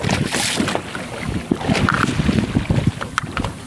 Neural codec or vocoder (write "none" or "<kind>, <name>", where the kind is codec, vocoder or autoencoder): none